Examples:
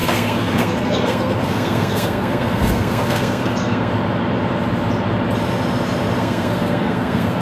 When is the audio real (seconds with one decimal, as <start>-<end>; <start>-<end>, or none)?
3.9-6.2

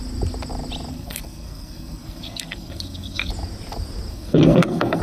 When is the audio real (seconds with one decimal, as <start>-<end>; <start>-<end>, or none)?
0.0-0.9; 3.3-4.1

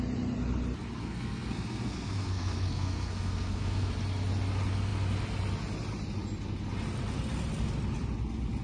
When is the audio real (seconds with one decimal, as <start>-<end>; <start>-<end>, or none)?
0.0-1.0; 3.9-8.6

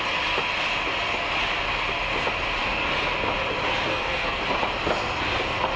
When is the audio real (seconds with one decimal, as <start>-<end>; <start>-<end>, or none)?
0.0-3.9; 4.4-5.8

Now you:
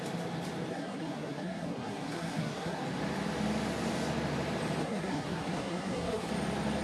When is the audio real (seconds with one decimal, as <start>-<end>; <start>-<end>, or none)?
0.0-0.7; 2.8-4.8; 6.3-6.8

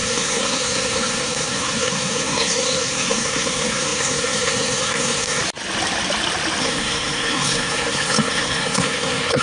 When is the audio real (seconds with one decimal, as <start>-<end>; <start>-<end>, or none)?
5.4-6.6

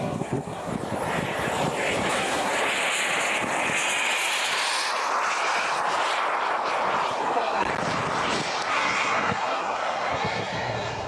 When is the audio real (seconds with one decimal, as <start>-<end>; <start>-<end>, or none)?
0.7-2.1; 2.5-7.2; 7.7-8.7

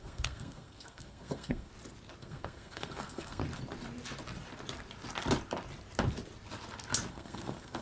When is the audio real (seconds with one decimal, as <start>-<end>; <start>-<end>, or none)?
1.7-2.2; 3.4-7.1